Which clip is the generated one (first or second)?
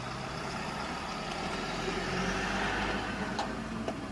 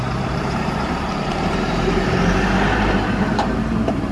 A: second